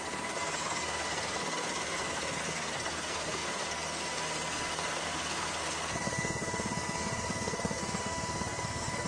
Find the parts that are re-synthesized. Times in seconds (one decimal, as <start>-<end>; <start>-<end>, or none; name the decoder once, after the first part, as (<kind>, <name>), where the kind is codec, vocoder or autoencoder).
0.0-9.1 (codec, SNAC)